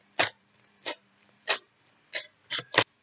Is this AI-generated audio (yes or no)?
yes